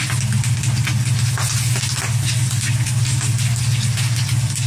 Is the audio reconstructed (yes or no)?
no